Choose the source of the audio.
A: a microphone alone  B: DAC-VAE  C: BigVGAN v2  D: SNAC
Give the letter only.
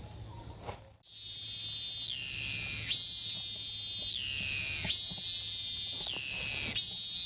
A